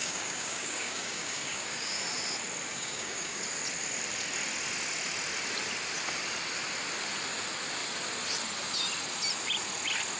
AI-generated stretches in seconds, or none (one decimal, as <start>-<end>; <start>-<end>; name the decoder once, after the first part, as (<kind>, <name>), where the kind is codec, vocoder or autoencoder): 0.0-2.0 (codec, DAC); 2.7-3.4